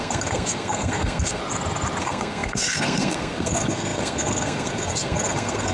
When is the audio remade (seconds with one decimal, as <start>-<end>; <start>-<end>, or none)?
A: 0.0-1.4; 2.0-5.7